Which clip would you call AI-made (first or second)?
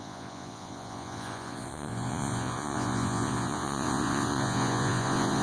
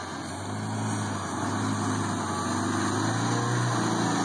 first